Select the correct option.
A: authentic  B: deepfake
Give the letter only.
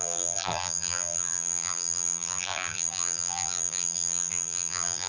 B